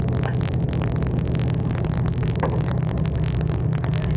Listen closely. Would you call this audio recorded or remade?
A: recorded